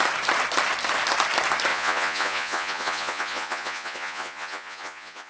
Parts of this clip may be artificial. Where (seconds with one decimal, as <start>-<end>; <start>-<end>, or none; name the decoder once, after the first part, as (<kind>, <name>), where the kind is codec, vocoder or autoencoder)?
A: 1.7-5.3 (vocoder, Vocos)